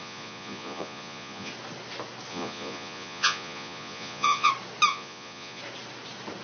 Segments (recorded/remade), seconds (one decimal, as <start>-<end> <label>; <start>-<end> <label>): 0.0-1.5 remade; 1.5-2.3 recorded; 2.3-4.5 remade; 4.5-4.9 recorded; 4.9-5.6 remade; 5.6-6.4 recorded

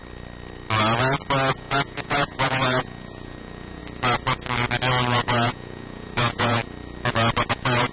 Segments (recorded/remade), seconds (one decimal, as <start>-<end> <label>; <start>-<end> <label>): 0.0-1.5 recorded; 1.5-3.8 remade; 3.8-5.2 recorded; 5.2-6.6 remade; 6.6-7.4 recorded; 7.4-7.9 remade

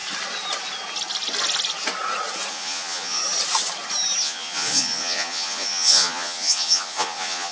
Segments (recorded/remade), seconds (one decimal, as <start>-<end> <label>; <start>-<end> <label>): 0.0-2.5 recorded; 2.5-3.2 remade; 3.2-4.2 recorded; 4.2-7.5 remade